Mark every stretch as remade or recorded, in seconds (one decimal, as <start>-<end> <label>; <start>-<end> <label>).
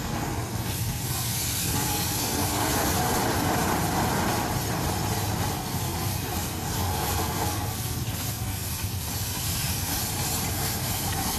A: 0.0-3.2 remade; 3.2-5.5 recorded; 5.5-9.9 remade; 9.9-10.5 recorded; 10.5-11.4 remade